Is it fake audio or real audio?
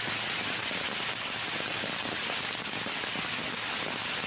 real